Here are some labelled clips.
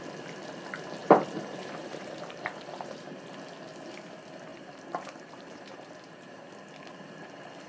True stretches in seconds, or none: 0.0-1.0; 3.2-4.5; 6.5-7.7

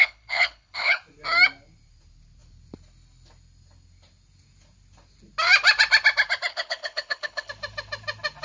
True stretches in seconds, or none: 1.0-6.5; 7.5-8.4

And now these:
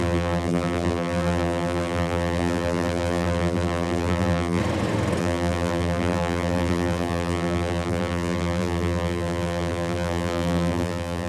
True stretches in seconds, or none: 4.6-5.2

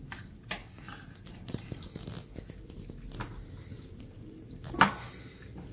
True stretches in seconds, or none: 0.0-0.6; 1.9-3.7; 4.9-5.7

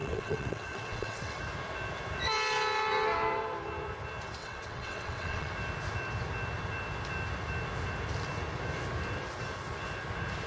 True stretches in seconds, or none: 1.4-4.4; 5.5-10.5